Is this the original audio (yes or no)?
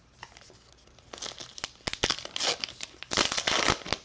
yes